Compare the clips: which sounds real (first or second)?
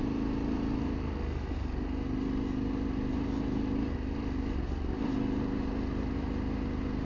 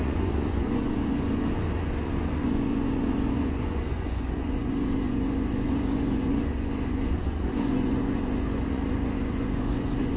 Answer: first